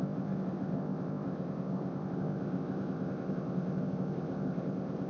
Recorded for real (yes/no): no